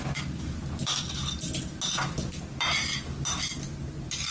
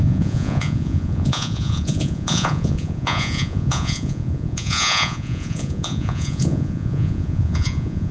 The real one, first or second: first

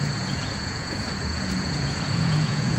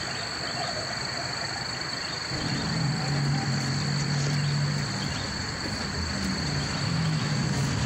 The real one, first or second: second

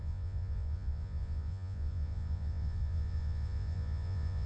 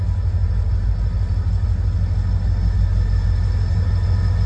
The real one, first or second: second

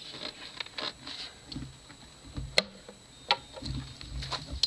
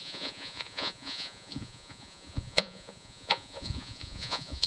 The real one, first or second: first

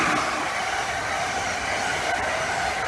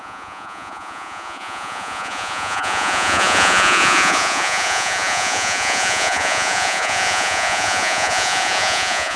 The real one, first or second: first